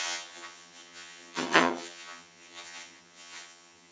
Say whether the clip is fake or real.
fake